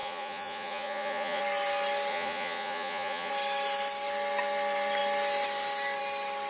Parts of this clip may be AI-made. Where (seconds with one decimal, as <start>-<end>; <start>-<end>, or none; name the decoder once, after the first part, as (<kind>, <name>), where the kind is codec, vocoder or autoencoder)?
0.0-1.4 (vocoder, Vocos); 2.1-3.3